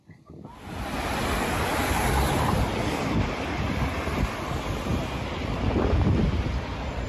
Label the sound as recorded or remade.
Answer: recorded